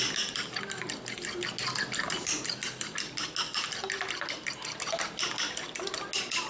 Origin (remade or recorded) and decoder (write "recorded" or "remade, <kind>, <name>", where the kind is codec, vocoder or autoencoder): recorded